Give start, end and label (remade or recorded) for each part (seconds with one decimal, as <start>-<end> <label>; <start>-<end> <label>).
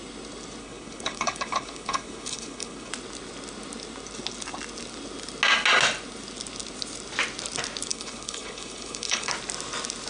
0.0-0.6 recorded; 0.6-2.9 remade; 2.9-7.9 recorded; 7.9-9.3 remade; 9.3-10.1 recorded